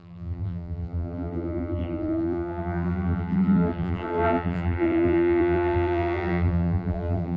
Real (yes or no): no